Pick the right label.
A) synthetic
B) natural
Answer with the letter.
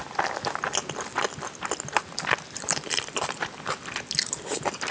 B